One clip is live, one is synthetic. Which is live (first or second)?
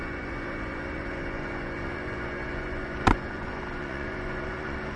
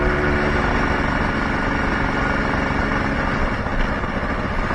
second